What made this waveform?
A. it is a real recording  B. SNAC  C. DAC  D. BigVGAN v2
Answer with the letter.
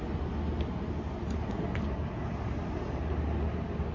A